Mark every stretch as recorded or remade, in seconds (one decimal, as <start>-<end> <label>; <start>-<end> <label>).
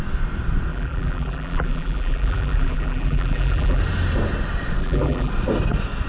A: 0.0-0.7 recorded; 0.7-3.8 remade; 3.8-4.8 recorded; 4.8-5.3 remade; 5.3-6.1 recorded